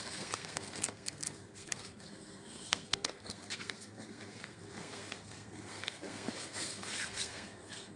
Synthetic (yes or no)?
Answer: yes